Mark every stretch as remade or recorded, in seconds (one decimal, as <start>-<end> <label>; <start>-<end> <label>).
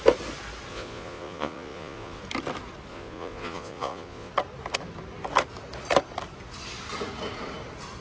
0.0-0.7 recorded; 0.7-2.2 remade; 2.2-2.9 recorded; 2.9-4.3 remade; 4.3-8.0 recorded